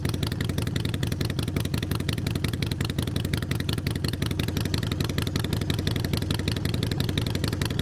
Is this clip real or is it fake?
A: real